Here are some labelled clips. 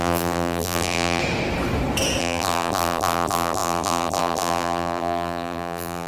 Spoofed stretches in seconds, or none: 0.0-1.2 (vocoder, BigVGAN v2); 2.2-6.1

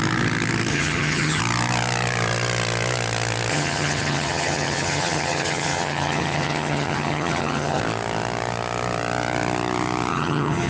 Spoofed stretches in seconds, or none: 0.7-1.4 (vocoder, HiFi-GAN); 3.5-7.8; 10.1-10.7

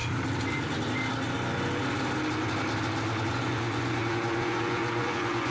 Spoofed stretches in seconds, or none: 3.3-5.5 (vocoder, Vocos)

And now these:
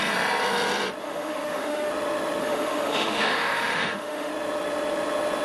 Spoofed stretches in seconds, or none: 1.0-1.9 (autoencoder, DAC-VAE); 2.4-4.3